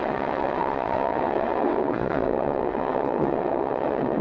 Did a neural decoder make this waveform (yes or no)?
yes